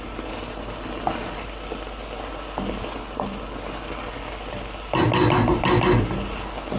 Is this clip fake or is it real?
real